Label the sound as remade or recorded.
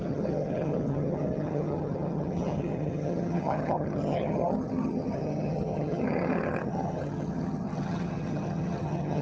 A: remade